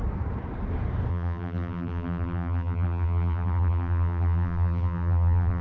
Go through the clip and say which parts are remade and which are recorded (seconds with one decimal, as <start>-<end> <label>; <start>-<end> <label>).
0.0-1.1 recorded; 1.1-5.6 remade